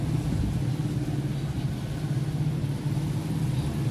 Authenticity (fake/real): real